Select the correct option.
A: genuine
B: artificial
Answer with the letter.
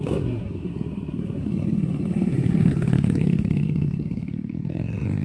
B